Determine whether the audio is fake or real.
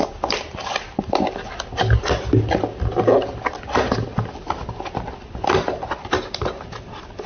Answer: real